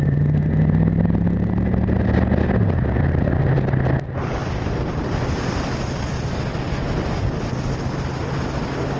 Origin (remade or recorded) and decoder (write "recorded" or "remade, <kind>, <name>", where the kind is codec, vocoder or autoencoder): recorded